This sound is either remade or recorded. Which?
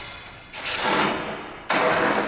recorded